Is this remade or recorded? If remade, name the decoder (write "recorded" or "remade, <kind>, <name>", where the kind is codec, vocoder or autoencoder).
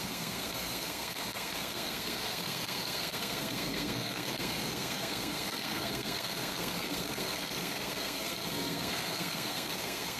remade, codec, SNAC